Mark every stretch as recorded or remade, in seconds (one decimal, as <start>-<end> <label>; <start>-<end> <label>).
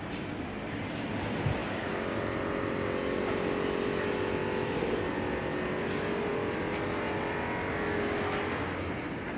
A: 0.0-9.4 recorded